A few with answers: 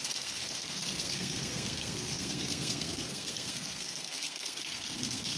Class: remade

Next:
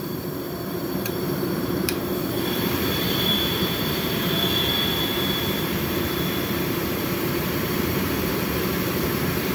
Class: remade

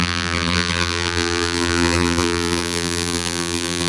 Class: remade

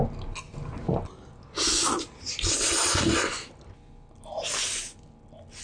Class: recorded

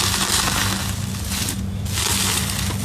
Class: recorded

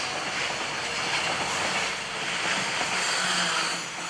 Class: recorded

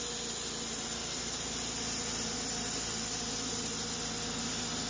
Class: recorded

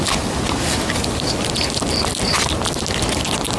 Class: recorded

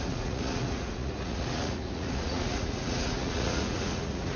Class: remade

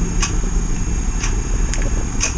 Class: recorded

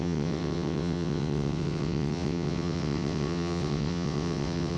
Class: remade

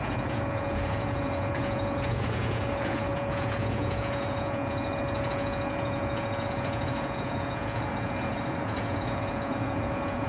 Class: remade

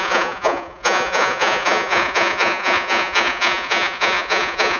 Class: remade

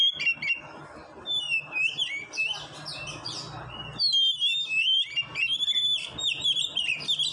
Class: recorded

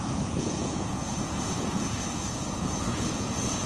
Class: remade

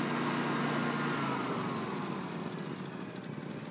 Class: recorded